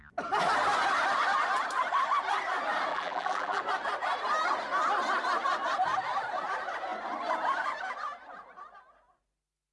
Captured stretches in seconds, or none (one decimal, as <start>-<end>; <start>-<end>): 0.0-2.9; 3.6-9.7